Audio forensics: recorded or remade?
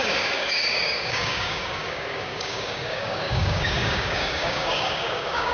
remade